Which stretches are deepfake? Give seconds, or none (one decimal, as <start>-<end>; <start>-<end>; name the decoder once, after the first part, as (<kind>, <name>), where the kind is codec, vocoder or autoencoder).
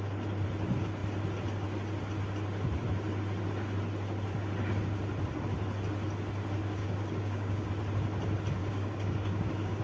6.8-7.7 (codec, DAC); 8.6-9.8